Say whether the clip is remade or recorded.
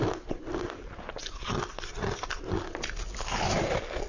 recorded